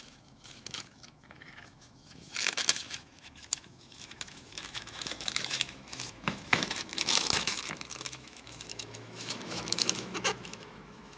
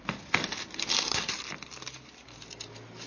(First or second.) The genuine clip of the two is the second